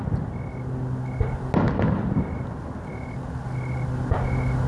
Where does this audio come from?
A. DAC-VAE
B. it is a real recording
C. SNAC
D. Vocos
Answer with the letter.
B